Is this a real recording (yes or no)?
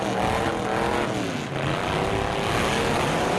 yes